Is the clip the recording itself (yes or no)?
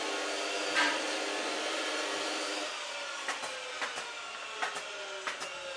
yes